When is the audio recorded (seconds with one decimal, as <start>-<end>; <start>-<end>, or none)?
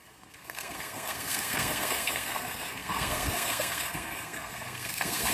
none